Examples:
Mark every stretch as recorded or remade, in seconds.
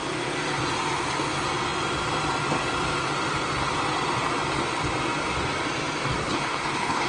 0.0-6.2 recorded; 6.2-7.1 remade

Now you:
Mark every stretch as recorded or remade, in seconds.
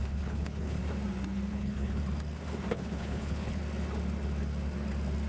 0.0-0.8 remade; 0.8-1.5 recorded; 1.5-2.0 remade; 2.0-2.7 recorded; 2.7-3.6 remade; 3.6-5.3 recorded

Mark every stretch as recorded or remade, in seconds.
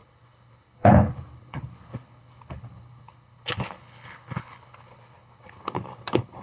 0.0-6.4 remade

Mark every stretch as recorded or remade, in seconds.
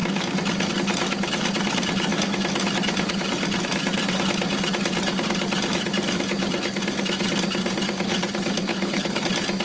0.0-8.7 recorded; 8.7-9.2 remade; 9.2-9.6 recorded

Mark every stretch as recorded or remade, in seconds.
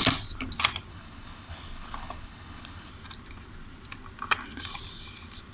0.0-0.9 recorded; 0.9-2.9 remade; 2.9-5.5 recorded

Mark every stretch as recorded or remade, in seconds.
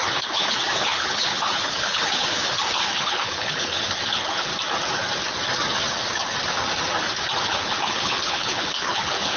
0.0-4.5 remade; 4.5-7.4 recorded; 7.4-9.4 remade